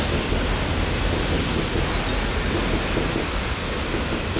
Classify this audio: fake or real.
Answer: real